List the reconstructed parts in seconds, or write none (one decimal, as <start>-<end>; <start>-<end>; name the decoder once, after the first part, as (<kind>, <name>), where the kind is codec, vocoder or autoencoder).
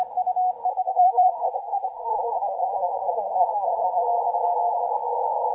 0.7-4.0 (codec, SNAC)